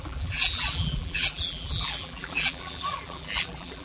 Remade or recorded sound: remade